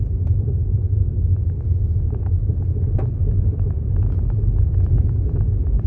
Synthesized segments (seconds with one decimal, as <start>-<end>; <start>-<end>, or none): none